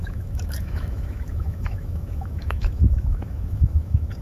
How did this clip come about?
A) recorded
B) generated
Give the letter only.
B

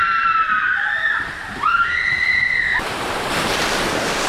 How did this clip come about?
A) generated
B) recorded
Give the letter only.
A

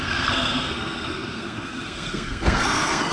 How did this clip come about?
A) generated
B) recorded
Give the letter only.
A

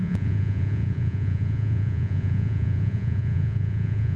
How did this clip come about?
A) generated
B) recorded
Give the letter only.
A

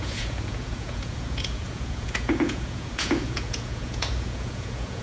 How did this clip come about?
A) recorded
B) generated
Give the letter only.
B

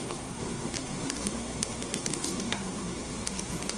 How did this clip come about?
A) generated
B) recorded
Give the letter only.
A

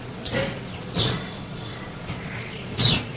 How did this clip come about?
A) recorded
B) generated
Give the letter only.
B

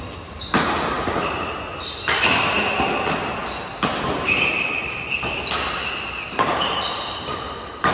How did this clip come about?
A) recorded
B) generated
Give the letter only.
A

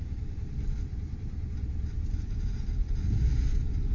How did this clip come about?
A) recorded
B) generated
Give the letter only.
A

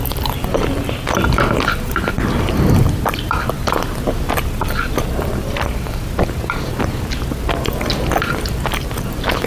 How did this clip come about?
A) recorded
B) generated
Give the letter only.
A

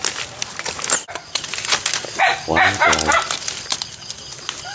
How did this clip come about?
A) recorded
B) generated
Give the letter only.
A